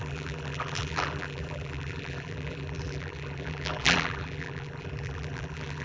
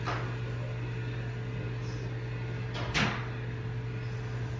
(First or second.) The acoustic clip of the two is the second